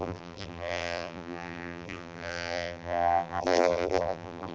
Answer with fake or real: fake